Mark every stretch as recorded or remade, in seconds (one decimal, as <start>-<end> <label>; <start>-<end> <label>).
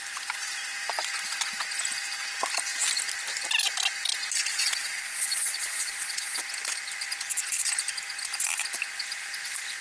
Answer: 0.0-4.5 recorded; 4.5-6.4 remade; 6.4-9.8 recorded